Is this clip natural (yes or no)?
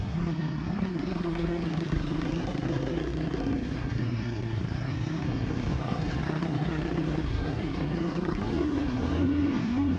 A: no